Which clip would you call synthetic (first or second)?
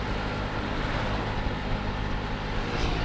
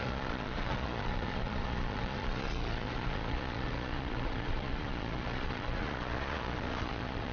second